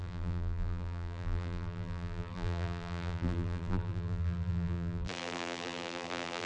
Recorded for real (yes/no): no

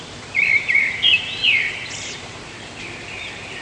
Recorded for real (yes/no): no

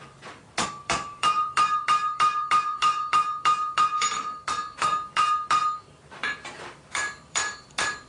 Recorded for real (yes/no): no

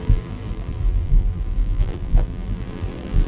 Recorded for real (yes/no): no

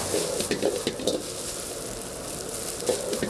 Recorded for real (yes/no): no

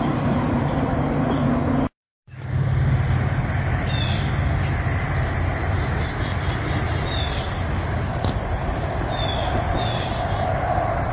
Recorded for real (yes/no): no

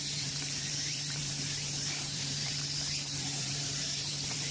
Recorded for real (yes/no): no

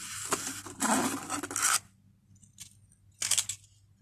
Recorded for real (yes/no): yes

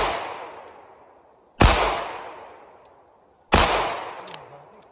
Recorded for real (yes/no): yes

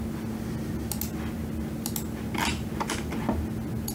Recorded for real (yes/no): yes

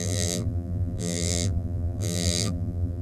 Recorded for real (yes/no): no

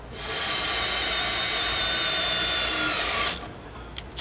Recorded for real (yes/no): yes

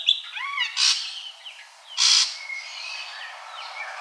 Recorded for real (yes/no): no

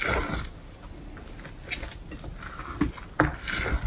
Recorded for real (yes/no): yes